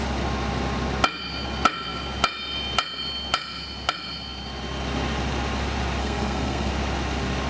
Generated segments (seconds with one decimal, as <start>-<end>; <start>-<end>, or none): 6.0-6.7